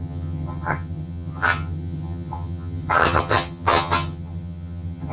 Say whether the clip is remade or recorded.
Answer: remade